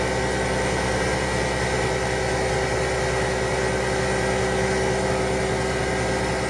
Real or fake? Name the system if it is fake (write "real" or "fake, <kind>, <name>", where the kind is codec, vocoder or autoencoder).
real